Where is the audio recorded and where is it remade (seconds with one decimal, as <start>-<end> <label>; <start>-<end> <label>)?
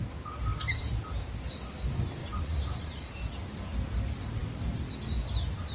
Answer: 0.0-2.2 recorded; 2.2-3.2 remade; 3.2-5.7 recorded